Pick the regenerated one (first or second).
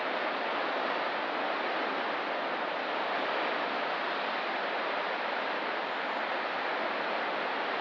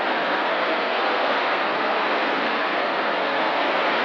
second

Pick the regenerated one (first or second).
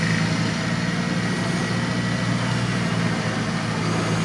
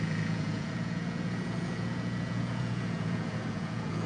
second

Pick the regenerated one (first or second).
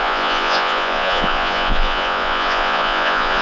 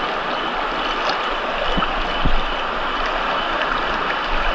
first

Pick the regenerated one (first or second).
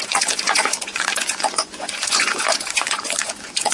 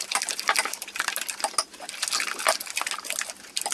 first